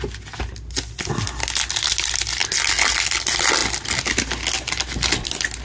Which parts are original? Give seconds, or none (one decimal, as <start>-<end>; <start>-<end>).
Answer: 0.0-5.6